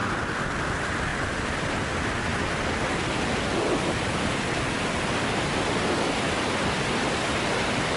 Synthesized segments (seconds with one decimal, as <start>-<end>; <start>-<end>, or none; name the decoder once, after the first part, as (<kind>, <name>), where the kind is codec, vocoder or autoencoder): 1.1-1.8 (vocoder, BigVGAN v2)